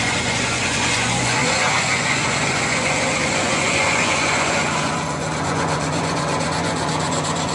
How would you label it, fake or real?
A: fake